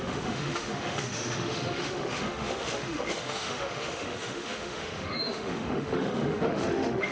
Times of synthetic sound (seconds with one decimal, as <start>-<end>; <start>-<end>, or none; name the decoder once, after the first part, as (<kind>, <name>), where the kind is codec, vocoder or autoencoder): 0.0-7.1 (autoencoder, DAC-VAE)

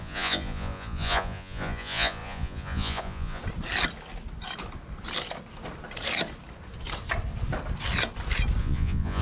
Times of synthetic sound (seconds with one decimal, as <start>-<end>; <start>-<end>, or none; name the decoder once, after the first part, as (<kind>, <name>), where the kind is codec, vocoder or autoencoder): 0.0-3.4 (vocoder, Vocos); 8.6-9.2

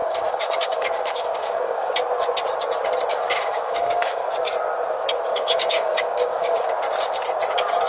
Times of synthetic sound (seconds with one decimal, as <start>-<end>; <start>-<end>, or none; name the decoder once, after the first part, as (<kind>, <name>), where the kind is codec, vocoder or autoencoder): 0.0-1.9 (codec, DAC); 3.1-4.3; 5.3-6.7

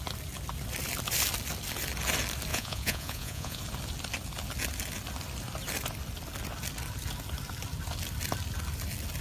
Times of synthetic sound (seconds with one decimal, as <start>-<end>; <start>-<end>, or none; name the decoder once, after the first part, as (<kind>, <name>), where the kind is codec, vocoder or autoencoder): 2.5-3.6 (vocoder, Vocos)